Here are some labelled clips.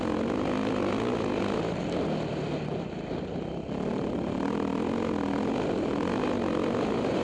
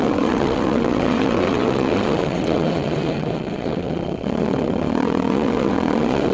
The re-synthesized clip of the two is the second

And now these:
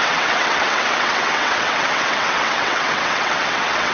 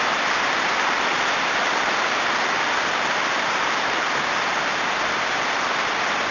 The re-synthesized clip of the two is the first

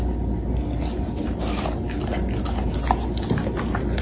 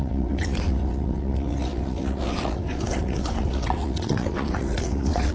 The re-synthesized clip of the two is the second